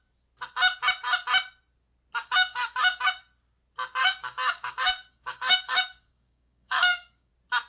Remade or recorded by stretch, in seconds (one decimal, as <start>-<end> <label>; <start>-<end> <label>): 0.0-2.2 recorded; 2.2-3.2 remade; 3.2-4.0 recorded; 4.0-7.3 remade; 7.3-7.7 recorded